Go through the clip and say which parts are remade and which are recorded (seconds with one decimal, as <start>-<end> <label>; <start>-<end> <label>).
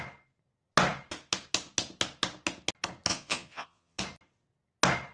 0.0-3.1 recorded; 3.1-4.0 remade; 4.0-5.1 recorded